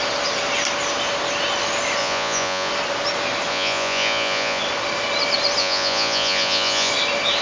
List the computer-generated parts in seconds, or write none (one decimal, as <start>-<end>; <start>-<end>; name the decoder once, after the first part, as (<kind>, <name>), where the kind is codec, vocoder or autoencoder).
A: 2.0-2.7 (vocoder, Vocos); 3.5-4.6; 5.6-6.9